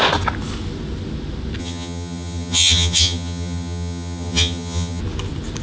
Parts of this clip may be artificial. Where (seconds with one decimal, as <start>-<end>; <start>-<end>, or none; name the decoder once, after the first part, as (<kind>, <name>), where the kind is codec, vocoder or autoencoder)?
1.6-5.0 (vocoder, HiFi-GAN)